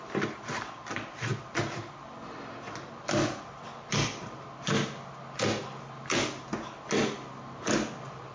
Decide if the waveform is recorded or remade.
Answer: recorded